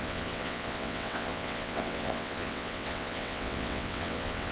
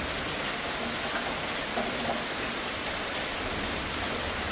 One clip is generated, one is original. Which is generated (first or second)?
first